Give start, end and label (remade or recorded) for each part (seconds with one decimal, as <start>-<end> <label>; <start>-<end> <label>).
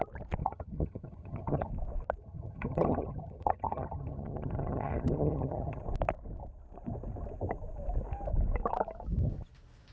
0.0-0.4 recorded; 0.4-1.7 remade; 1.7-2.2 recorded; 2.2-5.8 remade; 5.8-9.9 recorded